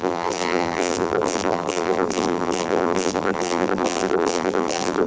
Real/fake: fake